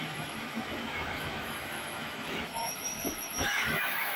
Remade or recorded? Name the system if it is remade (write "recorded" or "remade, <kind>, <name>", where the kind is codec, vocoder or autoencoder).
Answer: remade, autoencoder, DAC-VAE